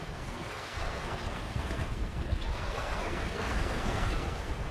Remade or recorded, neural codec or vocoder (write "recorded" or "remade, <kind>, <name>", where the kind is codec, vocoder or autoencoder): remade, codec, SNAC